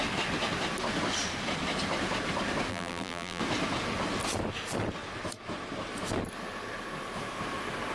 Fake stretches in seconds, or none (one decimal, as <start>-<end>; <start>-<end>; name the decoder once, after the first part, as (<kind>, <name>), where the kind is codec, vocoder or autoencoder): 2.7-3.4 (vocoder, BigVGAN v2)